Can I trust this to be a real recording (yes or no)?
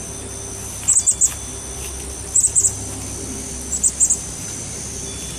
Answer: yes